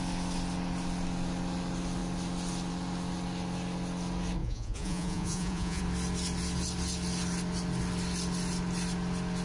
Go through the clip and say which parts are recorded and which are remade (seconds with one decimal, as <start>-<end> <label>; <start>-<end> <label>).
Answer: 0.0-4.4 recorded; 4.4-5.8 remade; 5.8-9.4 recorded